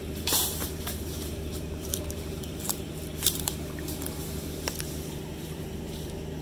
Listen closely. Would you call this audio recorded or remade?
remade